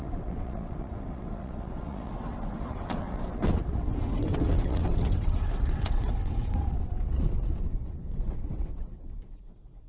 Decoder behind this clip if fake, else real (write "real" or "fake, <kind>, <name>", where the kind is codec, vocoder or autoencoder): fake, vocoder, WaveNeXt